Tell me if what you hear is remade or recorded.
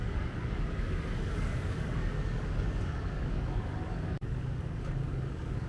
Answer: remade